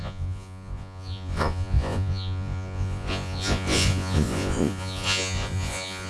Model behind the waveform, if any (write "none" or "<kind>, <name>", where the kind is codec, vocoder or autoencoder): vocoder, Vocos